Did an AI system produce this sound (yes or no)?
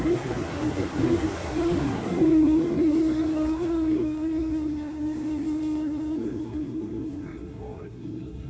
yes